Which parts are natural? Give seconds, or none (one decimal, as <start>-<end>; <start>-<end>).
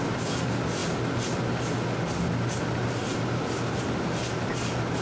0.8-2.6